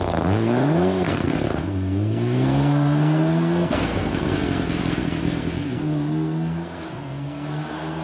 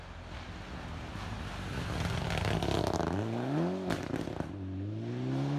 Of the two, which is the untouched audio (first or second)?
second